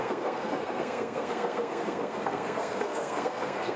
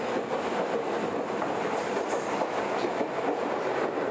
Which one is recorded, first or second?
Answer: second